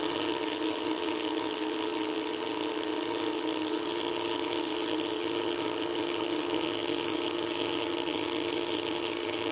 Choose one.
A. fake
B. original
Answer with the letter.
A